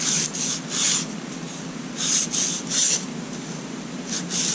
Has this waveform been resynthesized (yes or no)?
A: no